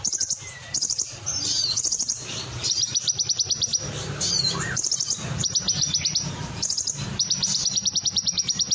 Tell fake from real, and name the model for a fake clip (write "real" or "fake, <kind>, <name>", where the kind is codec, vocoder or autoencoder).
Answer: fake, vocoder, BigVGAN v2